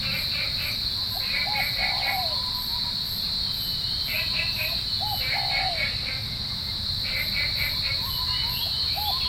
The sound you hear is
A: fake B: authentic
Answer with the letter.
B